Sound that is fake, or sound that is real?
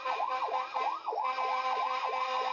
real